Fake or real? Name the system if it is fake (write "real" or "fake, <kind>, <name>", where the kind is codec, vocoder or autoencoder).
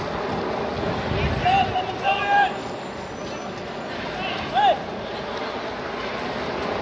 real